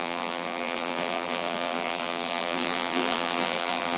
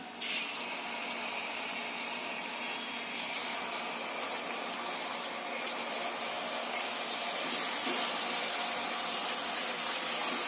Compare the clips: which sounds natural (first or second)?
second